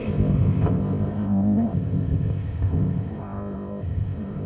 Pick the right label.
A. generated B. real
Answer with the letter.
A